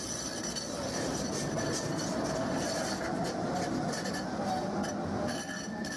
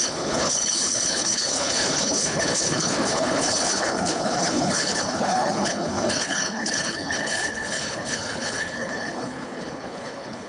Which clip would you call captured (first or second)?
first